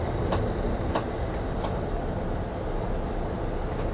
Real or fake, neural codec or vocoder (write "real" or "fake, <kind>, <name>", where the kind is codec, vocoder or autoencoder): real